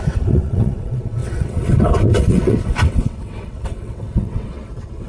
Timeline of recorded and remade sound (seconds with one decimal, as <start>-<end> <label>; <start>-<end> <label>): 0.0-5.1 remade